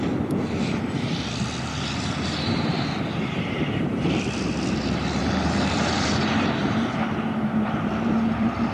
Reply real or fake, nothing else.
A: fake